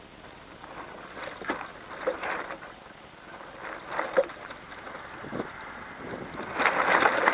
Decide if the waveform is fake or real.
real